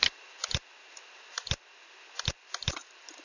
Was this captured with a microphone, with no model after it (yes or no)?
yes